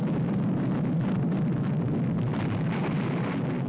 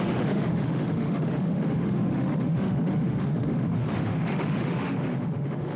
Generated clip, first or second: second